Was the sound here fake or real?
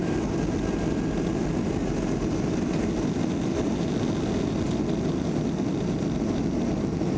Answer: real